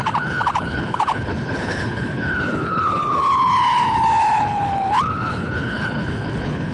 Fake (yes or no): yes